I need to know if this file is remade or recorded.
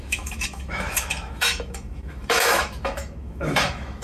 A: remade